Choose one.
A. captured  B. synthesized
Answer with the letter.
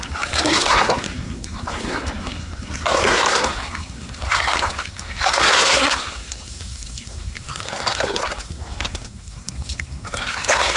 B